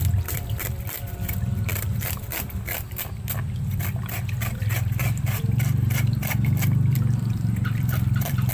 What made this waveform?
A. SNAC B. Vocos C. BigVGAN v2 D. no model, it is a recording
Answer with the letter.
C